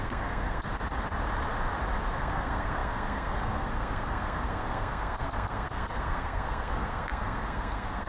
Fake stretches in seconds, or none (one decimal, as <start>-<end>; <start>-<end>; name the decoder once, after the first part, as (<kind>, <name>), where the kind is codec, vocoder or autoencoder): 0.0-0.7 (codec, SNAC); 2.1-8.1